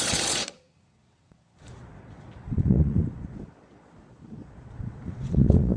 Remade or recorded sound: remade